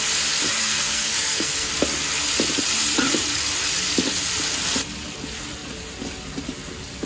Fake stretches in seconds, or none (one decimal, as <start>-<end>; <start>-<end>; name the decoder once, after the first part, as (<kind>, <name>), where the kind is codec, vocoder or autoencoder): 0.6-1.7 (codec, SNAC)